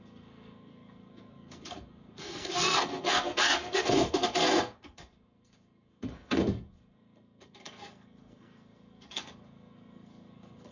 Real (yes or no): no